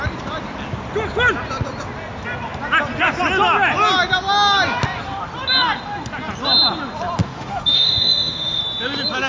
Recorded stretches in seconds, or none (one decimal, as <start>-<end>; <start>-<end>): 0.0-7.2; 8.6-9.3